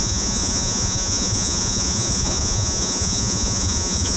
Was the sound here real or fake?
fake